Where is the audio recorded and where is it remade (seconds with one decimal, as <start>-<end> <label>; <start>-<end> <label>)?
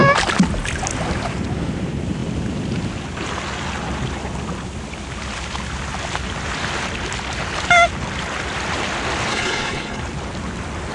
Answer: 0.0-9.3 recorded; 9.3-10.0 remade; 10.0-10.9 recorded